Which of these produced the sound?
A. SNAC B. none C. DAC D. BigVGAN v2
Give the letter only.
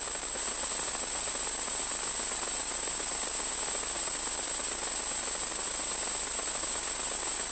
B